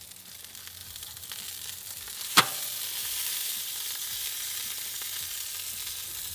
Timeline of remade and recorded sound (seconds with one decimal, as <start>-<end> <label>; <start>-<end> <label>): 0.0-0.8 recorded; 0.8-2.4 remade; 2.4-3.0 recorded; 3.0-5.3 remade; 5.3-6.3 recorded